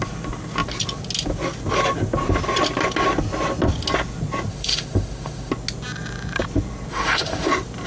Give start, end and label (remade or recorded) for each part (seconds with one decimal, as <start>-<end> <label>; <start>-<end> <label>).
0.0-4.5 recorded; 4.5-5.5 remade; 5.5-6.9 recorded; 6.9-7.5 remade; 7.5-7.9 recorded